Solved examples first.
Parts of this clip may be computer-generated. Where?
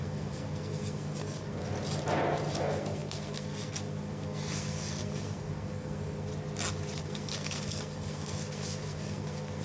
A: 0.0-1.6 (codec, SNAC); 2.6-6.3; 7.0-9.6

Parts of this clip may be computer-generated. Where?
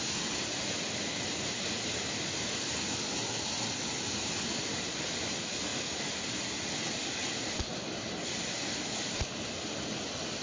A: none